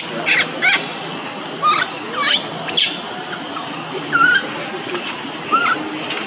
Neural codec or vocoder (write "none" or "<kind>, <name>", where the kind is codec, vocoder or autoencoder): none